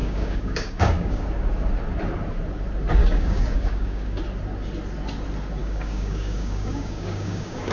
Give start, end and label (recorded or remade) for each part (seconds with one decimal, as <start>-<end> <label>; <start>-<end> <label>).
0.0-1.2 remade; 1.2-3.0 recorded; 3.0-4.2 remade; 4.2-5.6 recorded; 5.6-7.7 remade